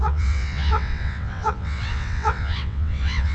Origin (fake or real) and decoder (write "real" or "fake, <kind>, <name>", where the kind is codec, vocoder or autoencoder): fake, vocoder, WaveNeXt